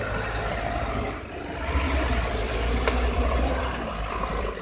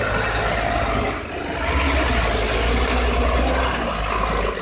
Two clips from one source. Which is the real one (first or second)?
second